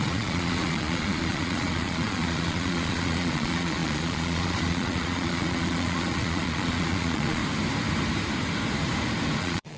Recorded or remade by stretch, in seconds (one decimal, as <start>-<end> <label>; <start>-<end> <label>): 0.0-7.4 remade; 7.4-9.4 recorded; 9.4-9.8 remade